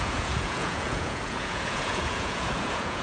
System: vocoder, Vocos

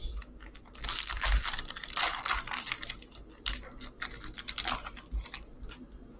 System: none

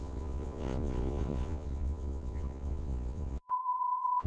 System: vocoder, Vocos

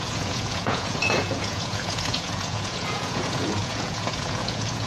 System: vocoder, Vocos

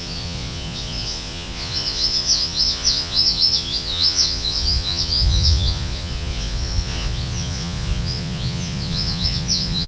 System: vocoder, Vocos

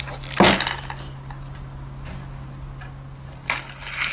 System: none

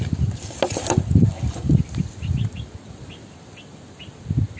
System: none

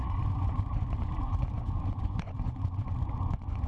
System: vocoder, Vocos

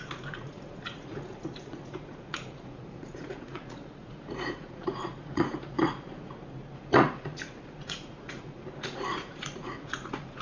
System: vocoder, Vocos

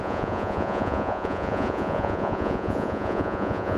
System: vocoder, Vocos